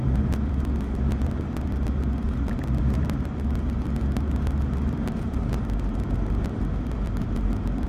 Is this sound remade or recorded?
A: recorded